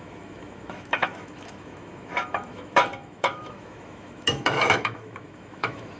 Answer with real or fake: fake